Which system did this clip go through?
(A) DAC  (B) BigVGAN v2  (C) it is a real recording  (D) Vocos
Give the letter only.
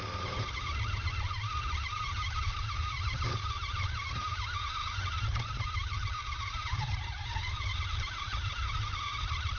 B